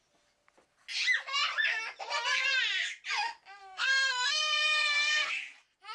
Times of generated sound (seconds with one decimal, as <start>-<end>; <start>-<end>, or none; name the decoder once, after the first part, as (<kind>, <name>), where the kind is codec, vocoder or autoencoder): 3.6-5.3 (codec, SNAC)

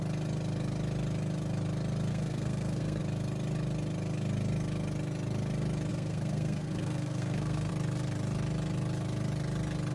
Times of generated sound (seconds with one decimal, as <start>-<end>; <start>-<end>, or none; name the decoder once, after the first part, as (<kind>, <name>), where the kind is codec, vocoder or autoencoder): 2.1-3.0 (codec, SNAC); 5.9-7.7

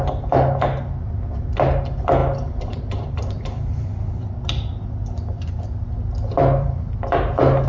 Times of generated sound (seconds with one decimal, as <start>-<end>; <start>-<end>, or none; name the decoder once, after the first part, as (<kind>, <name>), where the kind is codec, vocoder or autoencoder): 2.2-6.8 (vocoder, BigVGAN v2)

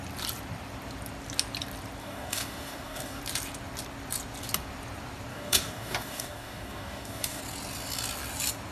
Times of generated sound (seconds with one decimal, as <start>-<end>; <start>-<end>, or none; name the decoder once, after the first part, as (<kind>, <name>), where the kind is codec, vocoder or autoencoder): 2.0-3.2 (codec, DAC); 5.3-7.4

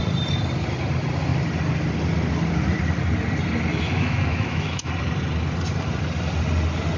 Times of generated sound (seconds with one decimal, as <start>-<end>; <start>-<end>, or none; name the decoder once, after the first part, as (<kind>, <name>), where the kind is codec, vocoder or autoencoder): 3.7-4.9 (autoencoder, DAC-VAE)

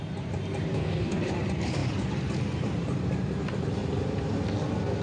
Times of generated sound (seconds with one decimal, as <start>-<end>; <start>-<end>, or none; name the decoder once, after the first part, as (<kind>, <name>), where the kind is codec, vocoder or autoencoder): 0.7-1.2 (codec, DAC)

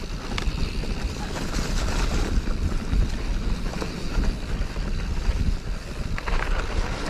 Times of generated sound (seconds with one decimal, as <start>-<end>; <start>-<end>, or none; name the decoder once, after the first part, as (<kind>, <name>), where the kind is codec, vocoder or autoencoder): none